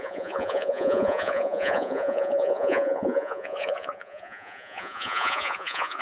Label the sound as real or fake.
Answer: fake